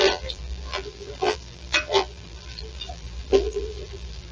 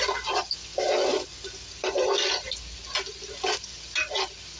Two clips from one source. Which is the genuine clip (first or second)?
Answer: second